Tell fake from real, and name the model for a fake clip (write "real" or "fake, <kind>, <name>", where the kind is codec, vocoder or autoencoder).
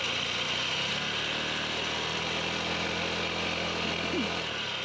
real